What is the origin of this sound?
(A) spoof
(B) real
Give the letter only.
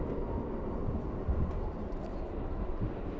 B